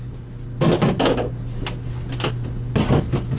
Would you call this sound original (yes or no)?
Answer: yes